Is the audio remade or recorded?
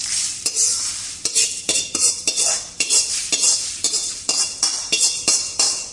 remade